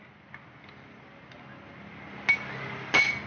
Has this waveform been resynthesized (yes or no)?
no